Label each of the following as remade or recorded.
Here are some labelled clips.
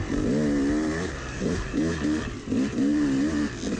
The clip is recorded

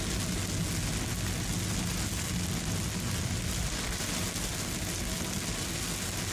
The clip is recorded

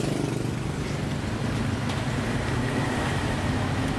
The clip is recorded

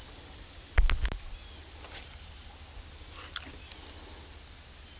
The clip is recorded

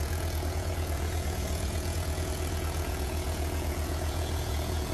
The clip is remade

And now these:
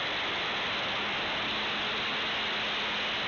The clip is recorded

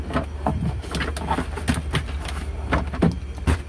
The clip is recorded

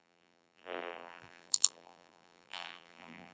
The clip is remade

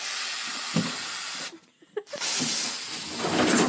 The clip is recorded